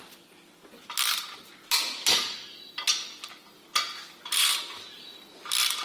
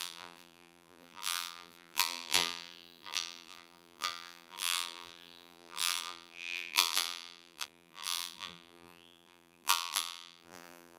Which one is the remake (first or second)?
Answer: second